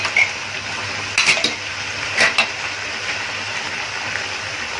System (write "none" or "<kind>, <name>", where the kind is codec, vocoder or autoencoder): none